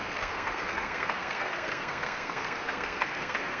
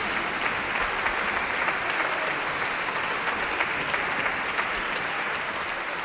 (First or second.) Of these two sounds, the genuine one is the second